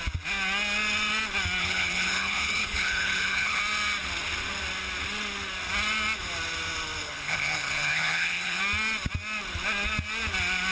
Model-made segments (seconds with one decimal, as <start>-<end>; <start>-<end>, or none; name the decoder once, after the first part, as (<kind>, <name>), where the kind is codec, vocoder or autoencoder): 1.6-3.6 (codec, HILCodec); 7.0-8.6

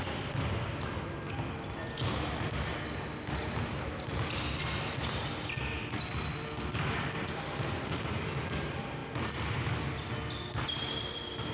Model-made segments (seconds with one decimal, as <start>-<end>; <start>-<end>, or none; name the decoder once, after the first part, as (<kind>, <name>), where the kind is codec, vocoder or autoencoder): none

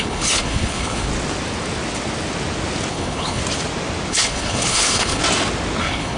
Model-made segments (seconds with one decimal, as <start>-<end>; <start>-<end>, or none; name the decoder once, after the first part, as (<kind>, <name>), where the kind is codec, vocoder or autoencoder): 0.0-1.1 (codec, HILCodec); 2.9-3.4; 4.1-5.2; 5.8-6.2

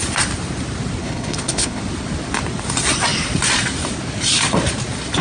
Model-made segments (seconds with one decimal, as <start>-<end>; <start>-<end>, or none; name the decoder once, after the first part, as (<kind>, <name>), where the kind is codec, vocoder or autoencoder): 1.0-1.8 (codec, HILCodec)

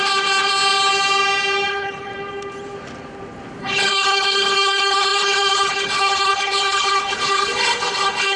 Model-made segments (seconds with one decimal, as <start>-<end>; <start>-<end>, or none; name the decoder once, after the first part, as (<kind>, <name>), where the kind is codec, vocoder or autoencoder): 1.7-2.1 (codec, HILCodec); 3.6-8.4

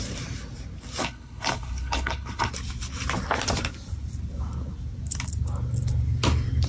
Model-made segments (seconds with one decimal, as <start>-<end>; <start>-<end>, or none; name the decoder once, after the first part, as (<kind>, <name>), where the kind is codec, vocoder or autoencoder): 1.0-2.5 (codec, HILCodec)

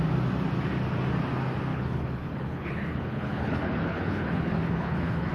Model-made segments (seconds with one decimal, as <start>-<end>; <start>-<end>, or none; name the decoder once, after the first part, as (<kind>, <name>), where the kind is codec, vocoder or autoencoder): 1.7-5.3 (codec, HILCodec)

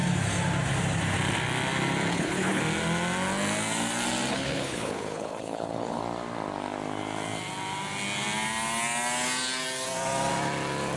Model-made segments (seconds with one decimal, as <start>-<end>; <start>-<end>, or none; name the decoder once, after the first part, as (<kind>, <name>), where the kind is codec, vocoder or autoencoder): 2.1-2.6 (codec, HILCodec); 4.3-6.0